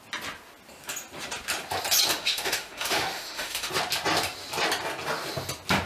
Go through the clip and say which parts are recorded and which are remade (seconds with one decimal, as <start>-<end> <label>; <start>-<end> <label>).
0.0-2.1 recorded; 2.1-3.7 remade; 3.7-5.9 recorded